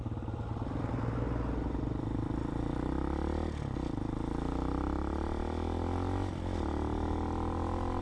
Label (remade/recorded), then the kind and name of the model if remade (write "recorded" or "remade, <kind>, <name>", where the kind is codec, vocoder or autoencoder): recorded